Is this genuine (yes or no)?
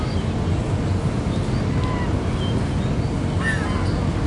yes